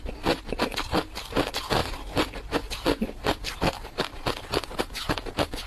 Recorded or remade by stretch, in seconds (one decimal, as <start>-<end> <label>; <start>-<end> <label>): 0.0-5.7 recorded